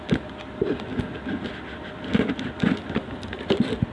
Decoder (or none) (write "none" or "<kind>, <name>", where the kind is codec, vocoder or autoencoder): none